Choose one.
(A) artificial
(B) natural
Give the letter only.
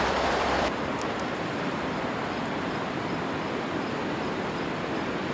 A